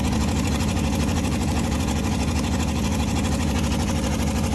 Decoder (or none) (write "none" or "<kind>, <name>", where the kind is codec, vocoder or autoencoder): vocoder, Vocos